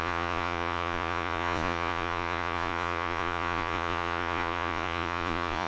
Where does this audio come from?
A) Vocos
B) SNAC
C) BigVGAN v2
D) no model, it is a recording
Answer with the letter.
A